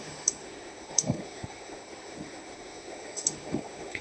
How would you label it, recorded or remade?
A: remade